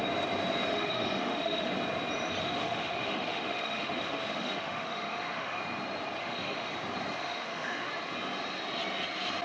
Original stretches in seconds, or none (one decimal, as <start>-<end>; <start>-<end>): 0.0-0.7; 1.7-2.4; 5.6-6.2; 6.7-7.2; 7.9-9.4